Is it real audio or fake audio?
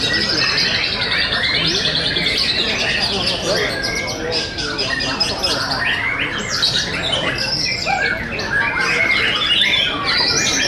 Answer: real